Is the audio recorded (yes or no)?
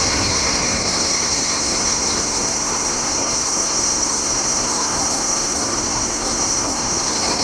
no